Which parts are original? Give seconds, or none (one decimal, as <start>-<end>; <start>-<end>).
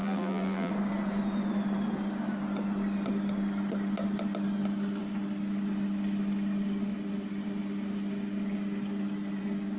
0.7-9.8